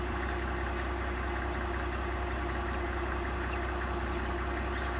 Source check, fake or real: real